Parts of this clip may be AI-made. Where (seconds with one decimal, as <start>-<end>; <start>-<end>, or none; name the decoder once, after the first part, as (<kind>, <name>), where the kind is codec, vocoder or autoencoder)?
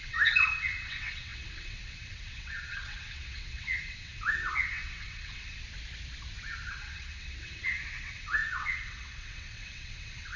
0.0-5.6 (vocoder, WaveNeXt); 6.7-10.4